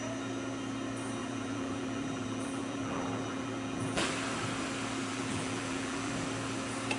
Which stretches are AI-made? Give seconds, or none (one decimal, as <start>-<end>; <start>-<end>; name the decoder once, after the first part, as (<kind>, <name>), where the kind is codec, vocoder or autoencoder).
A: 1.2-4.1 (vocoder, BigVGAN v2); 5.0-6.1